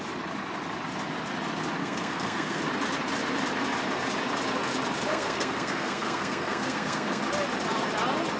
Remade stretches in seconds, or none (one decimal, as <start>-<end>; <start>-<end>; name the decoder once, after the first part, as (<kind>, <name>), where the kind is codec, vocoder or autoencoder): 1.8-2.6 (codec, SNAC); 5.1-7.2